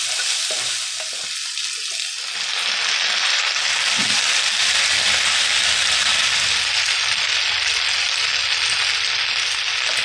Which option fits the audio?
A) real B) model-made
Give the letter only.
A